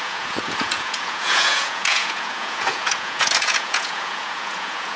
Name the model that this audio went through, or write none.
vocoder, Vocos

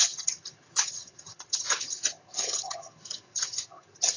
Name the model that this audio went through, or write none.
vocoder, HiFi-GAN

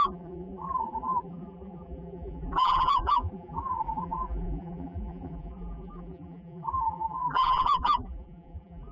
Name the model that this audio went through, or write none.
vocoder, BigVGAN v2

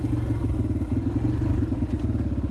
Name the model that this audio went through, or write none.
none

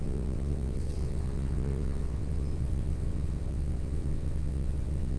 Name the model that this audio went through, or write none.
vocoder, WaveNeXt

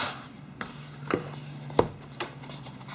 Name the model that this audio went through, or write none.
none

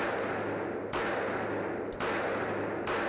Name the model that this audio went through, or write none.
none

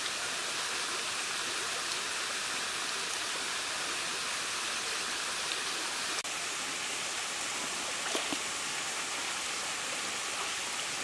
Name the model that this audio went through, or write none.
none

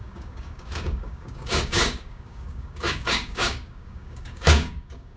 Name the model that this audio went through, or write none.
codec, DAC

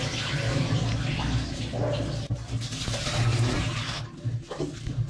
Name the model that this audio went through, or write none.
none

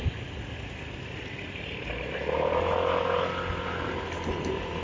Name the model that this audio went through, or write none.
none